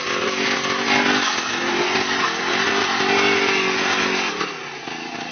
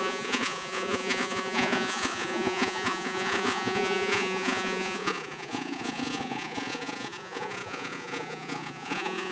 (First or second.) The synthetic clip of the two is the second